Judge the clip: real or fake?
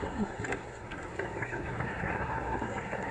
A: fake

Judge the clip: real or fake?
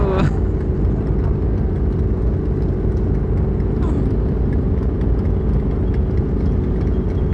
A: real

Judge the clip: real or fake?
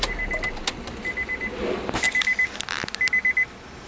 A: real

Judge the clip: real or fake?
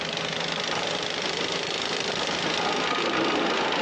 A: real